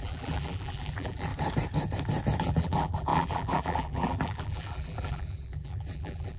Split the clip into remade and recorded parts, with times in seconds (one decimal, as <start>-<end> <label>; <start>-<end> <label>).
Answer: 0.0-1.3 remade; 1.3-2.4 recorded; 2.4-6.4 remade